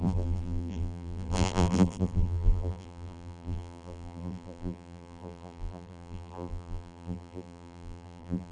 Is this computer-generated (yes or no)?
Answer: yes